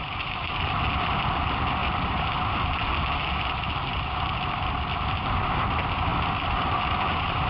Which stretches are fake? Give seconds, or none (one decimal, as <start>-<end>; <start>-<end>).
1.8-2.5; 6.1-6.8